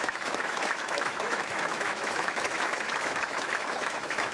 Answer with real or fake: fake